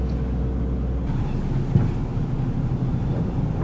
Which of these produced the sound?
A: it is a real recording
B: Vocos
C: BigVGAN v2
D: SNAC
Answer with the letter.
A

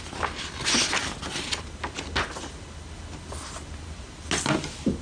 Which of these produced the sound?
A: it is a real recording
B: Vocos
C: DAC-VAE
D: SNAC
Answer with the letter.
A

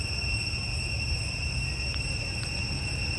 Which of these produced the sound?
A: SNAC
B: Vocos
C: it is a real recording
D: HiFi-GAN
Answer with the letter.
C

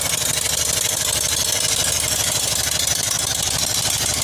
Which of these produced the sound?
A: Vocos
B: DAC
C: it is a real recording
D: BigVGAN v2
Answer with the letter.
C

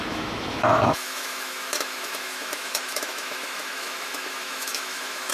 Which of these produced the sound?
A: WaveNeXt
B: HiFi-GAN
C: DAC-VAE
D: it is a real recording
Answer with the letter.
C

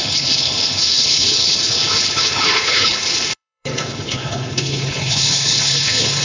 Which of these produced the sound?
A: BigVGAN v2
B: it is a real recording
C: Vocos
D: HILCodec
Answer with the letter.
D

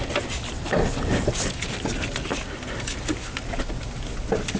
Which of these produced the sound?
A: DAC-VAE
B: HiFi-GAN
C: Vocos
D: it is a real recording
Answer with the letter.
D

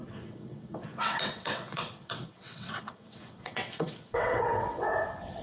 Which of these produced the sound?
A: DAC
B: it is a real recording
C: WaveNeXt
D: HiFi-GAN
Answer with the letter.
C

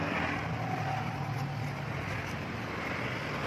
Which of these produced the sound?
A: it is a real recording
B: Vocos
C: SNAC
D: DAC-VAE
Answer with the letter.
A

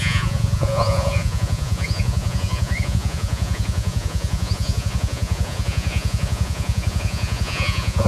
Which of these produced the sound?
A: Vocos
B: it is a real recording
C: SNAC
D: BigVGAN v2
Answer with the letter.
A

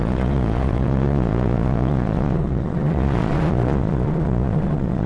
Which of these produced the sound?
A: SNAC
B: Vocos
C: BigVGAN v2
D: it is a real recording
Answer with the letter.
B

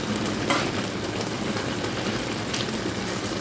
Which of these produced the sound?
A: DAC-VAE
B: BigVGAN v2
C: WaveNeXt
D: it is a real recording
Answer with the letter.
B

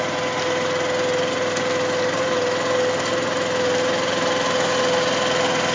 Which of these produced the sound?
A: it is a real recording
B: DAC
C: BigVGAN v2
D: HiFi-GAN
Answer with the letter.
A